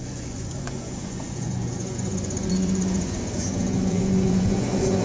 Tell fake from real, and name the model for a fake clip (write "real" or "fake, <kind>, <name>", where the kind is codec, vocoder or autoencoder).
fake, vocoder, Vocos